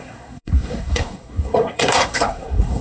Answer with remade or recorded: remade